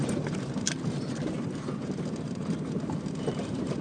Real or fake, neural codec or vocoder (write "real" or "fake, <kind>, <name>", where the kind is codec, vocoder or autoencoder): fake, vocoder, BigVGAN v2